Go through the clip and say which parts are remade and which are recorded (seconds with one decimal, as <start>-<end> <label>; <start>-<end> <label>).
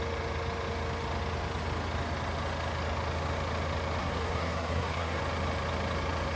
0.0-4.0 recorded; 4.0-5.2 remade; 5.2-6.4 recorded